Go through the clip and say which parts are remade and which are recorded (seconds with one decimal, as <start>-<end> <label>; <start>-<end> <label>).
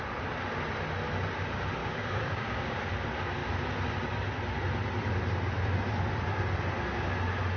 0.0-1.8 recorded; 1.8-2.9 remade; 2.9-7.6 recorded